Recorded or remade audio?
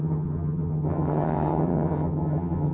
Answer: remade